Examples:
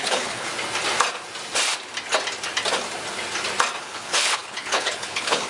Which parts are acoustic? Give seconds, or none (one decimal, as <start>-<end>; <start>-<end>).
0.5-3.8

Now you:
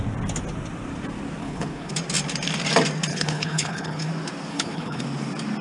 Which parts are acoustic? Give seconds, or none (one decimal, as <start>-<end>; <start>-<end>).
0.0-1.4; 1.9-3.1; 4.1-4.5; 5.0-5.6

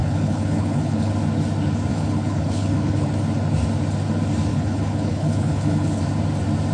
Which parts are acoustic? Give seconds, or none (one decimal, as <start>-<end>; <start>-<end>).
1.1-1.9; 3.1-4.5; 6.0-6.7

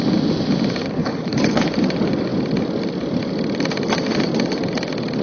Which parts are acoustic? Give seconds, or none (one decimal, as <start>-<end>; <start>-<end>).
0.0-1.0; 1.7-5.2